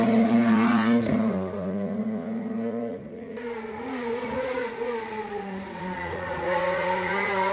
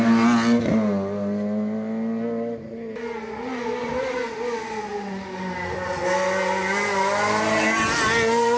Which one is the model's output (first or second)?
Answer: first